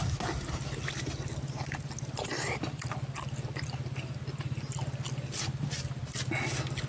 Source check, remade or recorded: recorded